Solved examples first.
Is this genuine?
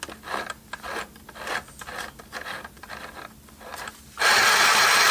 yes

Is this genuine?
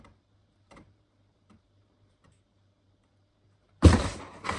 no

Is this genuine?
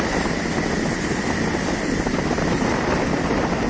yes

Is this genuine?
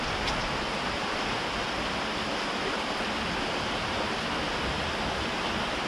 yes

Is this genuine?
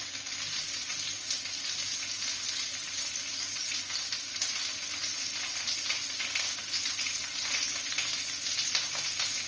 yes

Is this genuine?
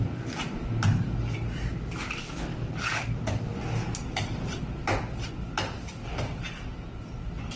yes